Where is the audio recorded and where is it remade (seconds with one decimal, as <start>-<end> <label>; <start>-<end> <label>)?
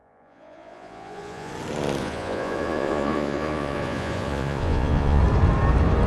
0.0-1.5 remade; 1.5-2.0 recorded; 2.0-5.2 remade; 5.2-6.1 recorded